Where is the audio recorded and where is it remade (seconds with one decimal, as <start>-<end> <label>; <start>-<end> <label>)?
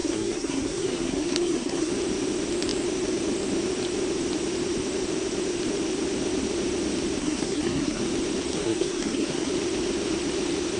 0.0-1.9 remade; 1.9-7.2 recorded; 7.2-8.0 remade; 8.0-8.5 recorded; 8.5-9.5 remade; 9.5-10.8 recorded